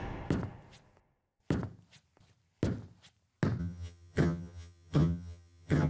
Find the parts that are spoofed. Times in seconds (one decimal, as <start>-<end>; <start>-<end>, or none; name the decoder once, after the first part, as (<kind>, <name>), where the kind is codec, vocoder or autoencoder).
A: 3.6-5.9 (vocoder, HiFi-GAN)